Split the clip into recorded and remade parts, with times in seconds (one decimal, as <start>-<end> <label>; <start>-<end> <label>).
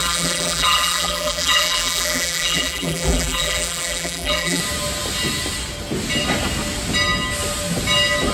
0.0-4.6 remade; 4.6-8.3 recorded